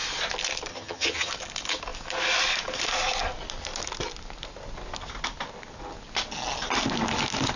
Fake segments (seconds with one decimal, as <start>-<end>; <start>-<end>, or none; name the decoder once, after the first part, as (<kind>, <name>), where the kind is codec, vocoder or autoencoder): 0.7-1.3 (vocoder, HiFi-GAN)